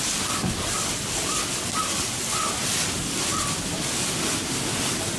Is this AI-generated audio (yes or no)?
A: no